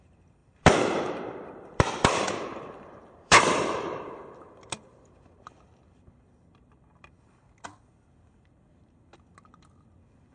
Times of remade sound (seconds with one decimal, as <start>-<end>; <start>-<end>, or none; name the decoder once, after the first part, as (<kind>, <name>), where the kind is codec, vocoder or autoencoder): 0.4-4.3 (vocoder, BigVGAN v2)